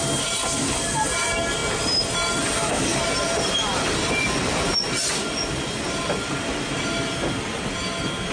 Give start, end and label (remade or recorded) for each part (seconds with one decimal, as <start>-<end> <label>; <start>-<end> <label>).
0.0-8.3 recorded